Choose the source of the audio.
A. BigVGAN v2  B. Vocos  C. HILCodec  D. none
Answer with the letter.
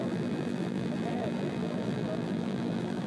A